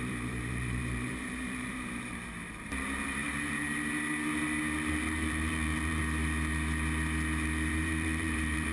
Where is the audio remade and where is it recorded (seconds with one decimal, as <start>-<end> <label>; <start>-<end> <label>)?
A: 0.0-3.6 remade; 3.6-4.9 recorded; 4.9-6.0 remade; 6.0-7.7 recorded; 7.7-8.7 remade